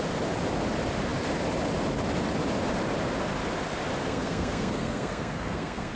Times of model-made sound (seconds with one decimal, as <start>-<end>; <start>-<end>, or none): 4.0-6.0